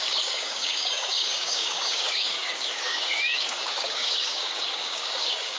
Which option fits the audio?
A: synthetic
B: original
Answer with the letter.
A